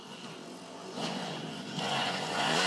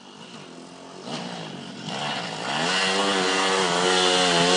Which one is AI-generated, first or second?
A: first